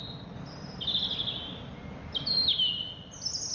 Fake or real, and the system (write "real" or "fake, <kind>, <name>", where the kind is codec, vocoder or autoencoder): real